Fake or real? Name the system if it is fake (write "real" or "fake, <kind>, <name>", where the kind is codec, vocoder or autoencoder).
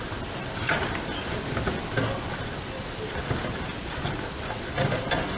real